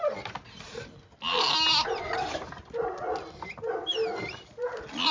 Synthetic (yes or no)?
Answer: no